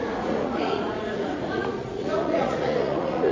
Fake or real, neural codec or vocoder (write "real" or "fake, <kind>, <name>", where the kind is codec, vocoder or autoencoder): fake, vocoder, Vocos